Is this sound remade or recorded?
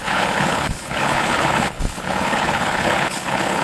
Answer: remade